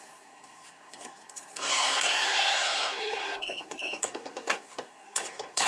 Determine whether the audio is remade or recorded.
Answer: remade